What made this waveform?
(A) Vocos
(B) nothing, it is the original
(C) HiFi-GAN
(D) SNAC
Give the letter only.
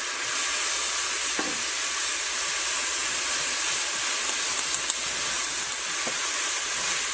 B